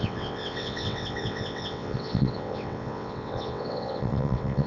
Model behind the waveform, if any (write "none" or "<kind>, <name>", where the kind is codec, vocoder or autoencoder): vocoder, WaveNeXt